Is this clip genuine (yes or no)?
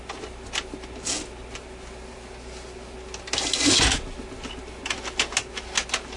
yes